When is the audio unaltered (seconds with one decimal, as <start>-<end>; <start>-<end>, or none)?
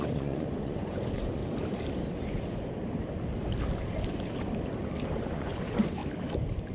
1.4-5.2; 6.0-6.7